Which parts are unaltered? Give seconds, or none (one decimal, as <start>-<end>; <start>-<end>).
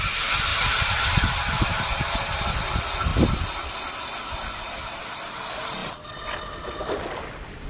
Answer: 0.0-0.5; 1.2-7.7